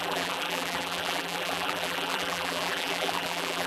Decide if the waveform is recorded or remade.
remade